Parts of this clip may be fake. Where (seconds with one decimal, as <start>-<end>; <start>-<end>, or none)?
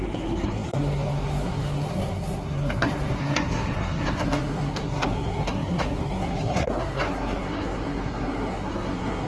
0.0-9.3